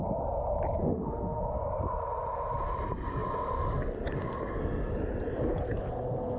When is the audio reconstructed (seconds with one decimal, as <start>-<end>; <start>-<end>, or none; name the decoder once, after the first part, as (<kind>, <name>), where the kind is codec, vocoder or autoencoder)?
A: 0.8-1.4 (autoencoder, DAC-VAE)